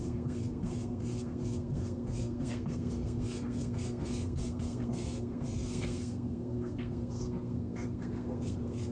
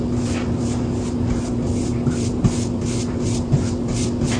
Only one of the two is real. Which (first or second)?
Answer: second